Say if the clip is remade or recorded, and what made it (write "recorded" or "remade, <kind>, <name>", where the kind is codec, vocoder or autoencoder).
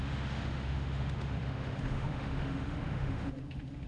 remade, autoencoder, DAC-VAE